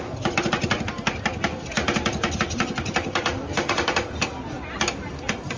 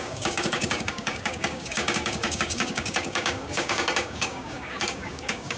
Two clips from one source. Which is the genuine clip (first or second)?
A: first